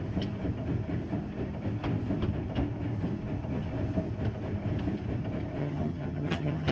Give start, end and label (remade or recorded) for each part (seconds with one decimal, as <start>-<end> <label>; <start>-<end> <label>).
0.0-5.6 recorded; 5.6-6.7 remade